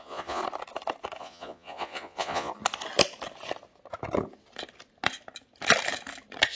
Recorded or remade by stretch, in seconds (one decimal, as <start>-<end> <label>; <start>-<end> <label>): 0.0-0.4 remade; 0.4-1.2 recorded; 1.2-2.5 remade; 2.5-6.5 recorded